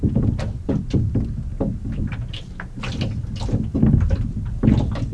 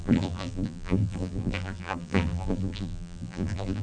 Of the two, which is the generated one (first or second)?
second